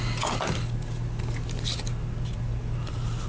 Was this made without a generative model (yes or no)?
yes